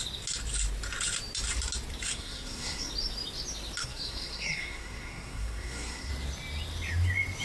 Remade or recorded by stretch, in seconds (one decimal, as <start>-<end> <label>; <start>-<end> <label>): 0.0-2.1 recorded; 2.1-2.9 remade; 2.9-3.8 recorded; 3.8-6.1 remade; 6.1-7.4 recorded